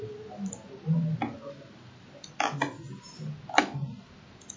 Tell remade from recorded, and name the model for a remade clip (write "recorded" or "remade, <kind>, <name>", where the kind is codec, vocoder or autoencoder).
recorded